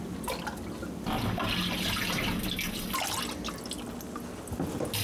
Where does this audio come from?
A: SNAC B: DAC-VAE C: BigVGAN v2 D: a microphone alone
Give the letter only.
D